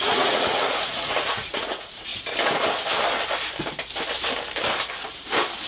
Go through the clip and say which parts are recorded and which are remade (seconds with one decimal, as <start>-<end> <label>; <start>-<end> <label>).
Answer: 0.0-2.1 remade; 2.1-5.7 recorded